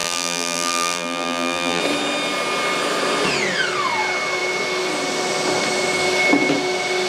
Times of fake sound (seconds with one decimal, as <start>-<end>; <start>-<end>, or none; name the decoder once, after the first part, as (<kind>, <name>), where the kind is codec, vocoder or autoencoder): 0.0-1.8 (vocoder, BigVGAN v2)